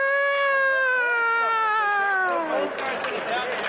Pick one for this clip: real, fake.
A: real